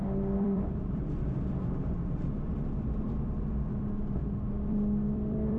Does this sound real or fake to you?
fake